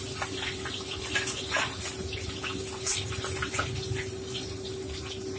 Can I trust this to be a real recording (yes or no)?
yes